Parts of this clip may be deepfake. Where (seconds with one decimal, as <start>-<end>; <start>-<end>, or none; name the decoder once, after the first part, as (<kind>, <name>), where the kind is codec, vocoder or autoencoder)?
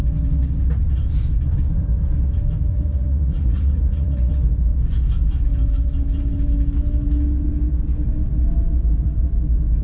2.7-4.3 (vocoder, Vocos)